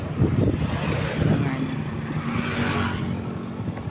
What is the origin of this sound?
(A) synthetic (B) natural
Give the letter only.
B